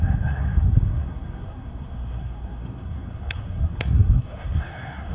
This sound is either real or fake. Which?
fake